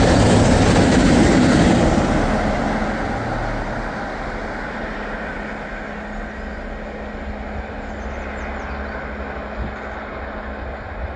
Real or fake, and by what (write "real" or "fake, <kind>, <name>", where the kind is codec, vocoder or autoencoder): real